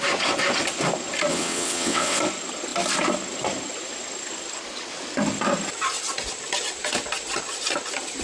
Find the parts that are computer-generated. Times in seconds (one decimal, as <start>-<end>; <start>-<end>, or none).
1.3-2.2